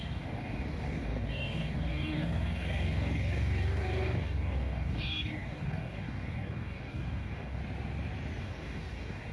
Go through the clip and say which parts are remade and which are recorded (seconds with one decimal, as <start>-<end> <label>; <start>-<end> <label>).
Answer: 0.0-7.6 remade; 7.6-8.4 recorded; 8.4-9.3 remade